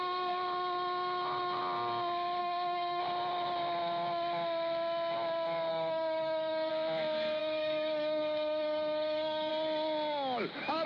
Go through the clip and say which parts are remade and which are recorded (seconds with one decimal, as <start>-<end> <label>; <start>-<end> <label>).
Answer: 0.0-2.4 recorded; 2.4-3.0 remade; 3.0-5.7 recorded; 5.7-6.7 remade; 6.7-7.4 recorded; 7.4-9.5 remade; 9.5-10.9 recorded